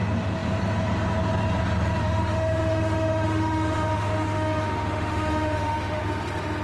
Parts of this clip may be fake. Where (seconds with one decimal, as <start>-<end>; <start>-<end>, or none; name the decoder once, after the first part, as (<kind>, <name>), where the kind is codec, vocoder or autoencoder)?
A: 2.0-6.0 (autoencoder, DAC-VAE)